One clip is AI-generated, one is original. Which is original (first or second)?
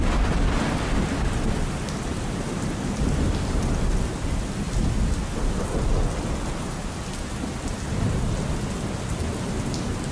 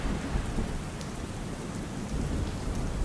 first